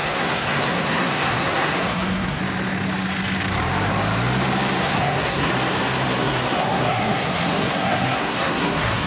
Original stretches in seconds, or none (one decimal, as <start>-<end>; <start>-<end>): 2.4-4.8; 5.5-6.2